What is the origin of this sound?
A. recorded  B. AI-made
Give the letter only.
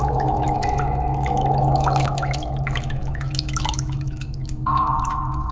B